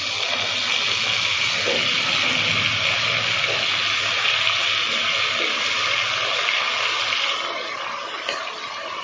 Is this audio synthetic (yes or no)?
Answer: no